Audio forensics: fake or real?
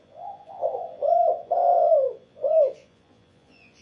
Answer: fake